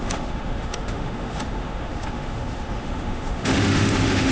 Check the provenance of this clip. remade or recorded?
remade